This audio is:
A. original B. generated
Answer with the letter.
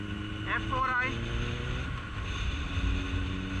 A